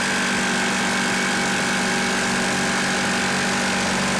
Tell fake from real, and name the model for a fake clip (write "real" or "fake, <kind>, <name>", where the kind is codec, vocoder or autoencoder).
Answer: real